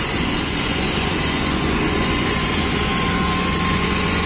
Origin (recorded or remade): remade